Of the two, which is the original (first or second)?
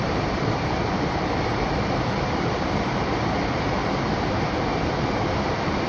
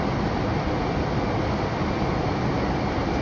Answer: second